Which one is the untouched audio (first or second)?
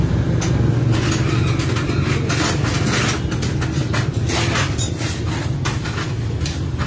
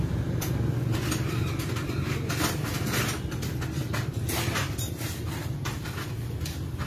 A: first